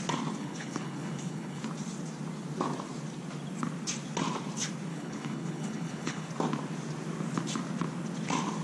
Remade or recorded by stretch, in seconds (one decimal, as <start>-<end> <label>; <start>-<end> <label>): 0.0-0.4 recorded; 0.4-1.6 remade; 1.6-4.9 recorded; 4.9-6.3 remade; 6.3-8.6 recorded